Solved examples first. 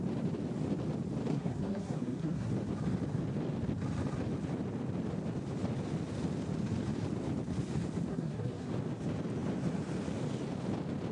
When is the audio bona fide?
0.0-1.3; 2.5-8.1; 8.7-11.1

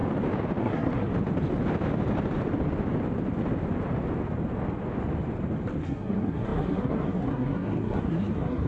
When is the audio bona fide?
0.0-0.6; 1.1-5.8

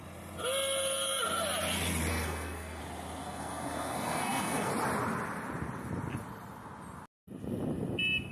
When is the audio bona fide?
0.0-2.1; 2.8-3.2; 4.7-8.3